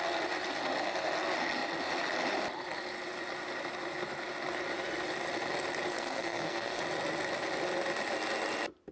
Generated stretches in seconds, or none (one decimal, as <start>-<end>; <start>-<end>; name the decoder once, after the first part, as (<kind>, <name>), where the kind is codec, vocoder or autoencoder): 5.9-6.8 (codec, SNAC)